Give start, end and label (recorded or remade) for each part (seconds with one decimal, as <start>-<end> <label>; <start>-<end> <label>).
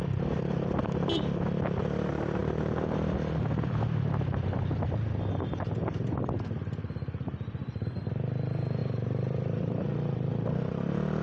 0.0-2.4 recorded; 2.4-4.9 remade; 4.9-8.8 recorded; 8.8-10.7 remade; 10.7-11.2 recorded